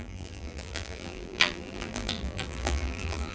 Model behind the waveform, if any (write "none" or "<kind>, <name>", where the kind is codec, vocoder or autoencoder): vocoder, BigVGAN v2